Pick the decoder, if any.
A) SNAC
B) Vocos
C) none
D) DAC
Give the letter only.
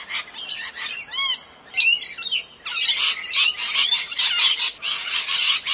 C